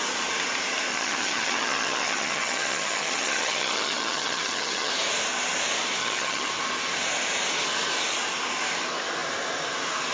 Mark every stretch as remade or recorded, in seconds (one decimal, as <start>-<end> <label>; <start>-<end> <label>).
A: 0.0-0.9 recorded; 0.9-4.9 remade; 4.9-6.0 recorded; 6.0-6.5 remade; 6.5-10.1 recorded